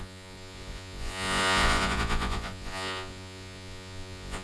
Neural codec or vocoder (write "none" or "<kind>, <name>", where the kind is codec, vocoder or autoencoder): vocoder, Vocos